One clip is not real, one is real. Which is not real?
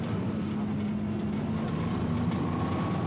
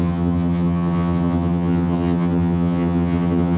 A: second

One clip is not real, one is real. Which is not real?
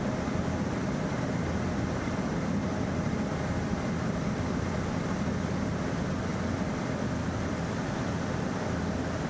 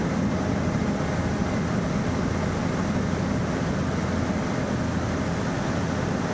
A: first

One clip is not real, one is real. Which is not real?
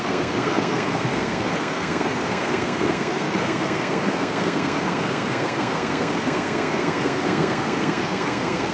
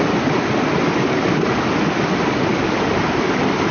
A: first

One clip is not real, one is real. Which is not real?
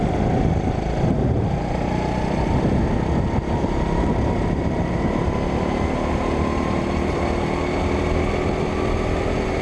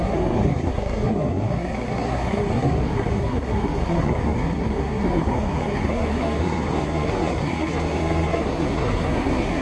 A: second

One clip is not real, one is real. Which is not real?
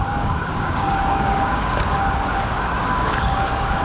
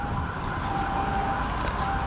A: first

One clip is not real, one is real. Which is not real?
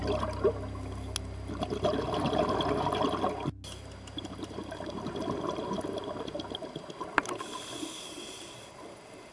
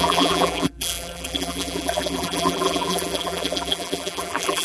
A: second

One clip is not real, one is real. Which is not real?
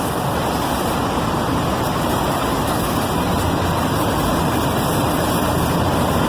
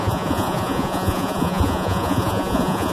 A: second